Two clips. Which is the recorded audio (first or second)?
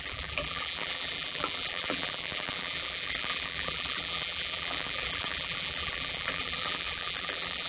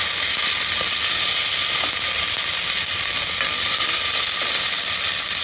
second